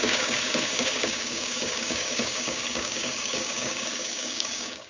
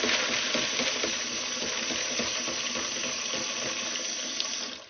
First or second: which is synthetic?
first